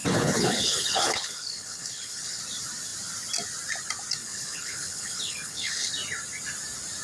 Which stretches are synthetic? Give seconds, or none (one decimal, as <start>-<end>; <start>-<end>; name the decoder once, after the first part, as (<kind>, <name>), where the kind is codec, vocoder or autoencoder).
0.0-2.4 (codec, HILCodec); 4.2-5.9